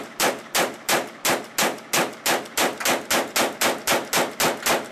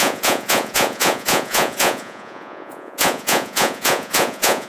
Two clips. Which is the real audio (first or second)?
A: first